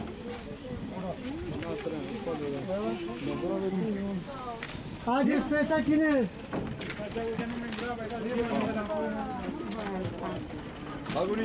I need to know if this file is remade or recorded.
recorded